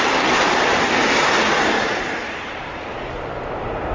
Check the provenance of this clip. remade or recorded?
recorded